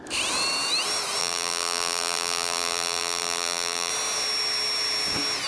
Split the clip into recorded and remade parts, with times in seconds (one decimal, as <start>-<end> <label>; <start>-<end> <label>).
0.0-1.2 recorded; 1.2-3.9 remade; 3.9-5.5 recorded